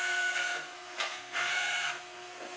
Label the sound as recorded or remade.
remade